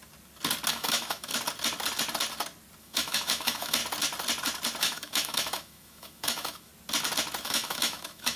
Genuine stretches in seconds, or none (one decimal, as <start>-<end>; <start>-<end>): 0.0-0.7; 1.3-2.8; 3.8-4.8; 6.7-7.4